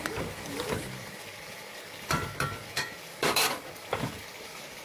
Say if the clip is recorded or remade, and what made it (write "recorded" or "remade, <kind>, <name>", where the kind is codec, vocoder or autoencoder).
remade, codec, DAC